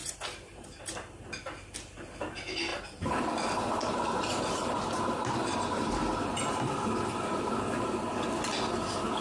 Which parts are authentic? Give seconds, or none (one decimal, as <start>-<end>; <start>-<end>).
0.9-2.7; 7.5-9.2